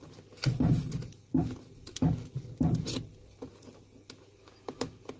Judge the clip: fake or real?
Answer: real